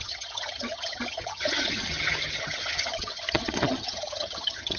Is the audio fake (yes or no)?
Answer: yes